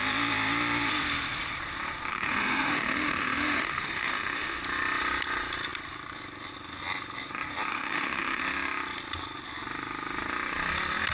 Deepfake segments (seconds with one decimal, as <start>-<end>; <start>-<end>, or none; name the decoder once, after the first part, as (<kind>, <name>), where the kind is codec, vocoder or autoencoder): 2.1-4.6 (autoencoder, DAC-VAE); 7.7-8.4